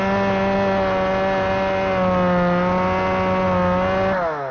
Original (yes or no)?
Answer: yes